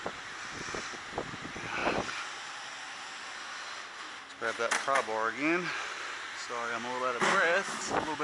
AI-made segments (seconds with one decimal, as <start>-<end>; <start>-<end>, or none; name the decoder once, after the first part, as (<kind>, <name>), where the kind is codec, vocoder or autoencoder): none